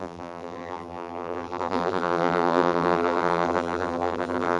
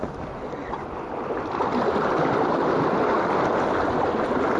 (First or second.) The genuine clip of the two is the second